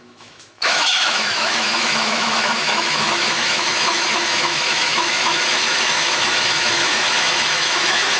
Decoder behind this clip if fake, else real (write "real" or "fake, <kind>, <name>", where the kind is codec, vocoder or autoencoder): fake, autoencoder, DAC-VAE